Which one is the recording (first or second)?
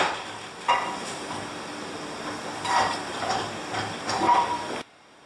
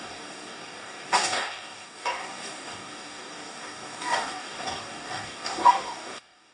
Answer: first